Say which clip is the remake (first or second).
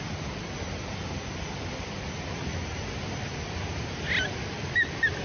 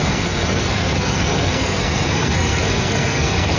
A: second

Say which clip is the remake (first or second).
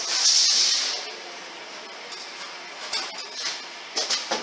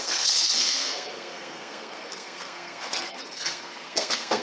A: second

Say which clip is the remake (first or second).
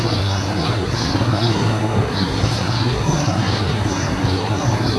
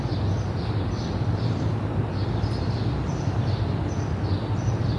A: first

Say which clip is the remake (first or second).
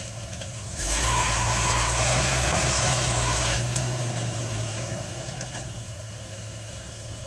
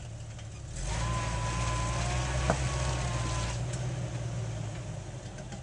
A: first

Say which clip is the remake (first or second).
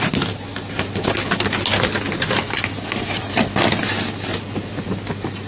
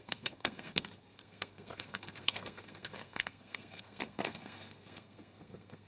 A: second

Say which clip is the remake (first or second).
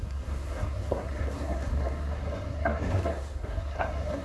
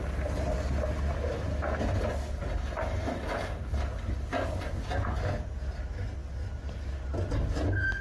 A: first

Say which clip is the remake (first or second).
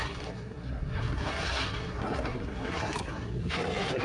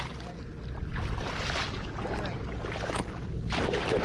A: first